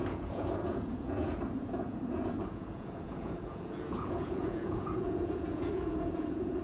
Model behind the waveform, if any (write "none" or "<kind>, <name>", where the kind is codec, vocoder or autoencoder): vocoder, Vocos